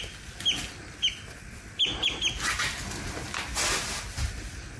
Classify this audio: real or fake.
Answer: real